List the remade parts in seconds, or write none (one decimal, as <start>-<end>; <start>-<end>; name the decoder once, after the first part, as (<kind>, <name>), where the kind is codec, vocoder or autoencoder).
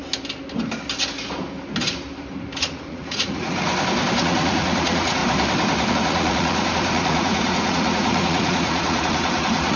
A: 2.6-3.7 (vocoder, Vocos); 4.2-5.2; 5.9-9.8